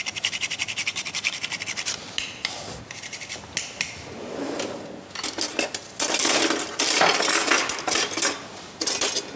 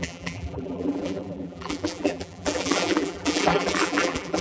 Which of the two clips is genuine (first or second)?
first